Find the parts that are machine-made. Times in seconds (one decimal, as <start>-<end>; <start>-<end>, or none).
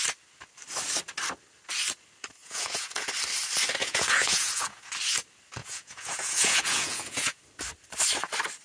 2.4-3.1; 3.8-4.9; 5.6-7.4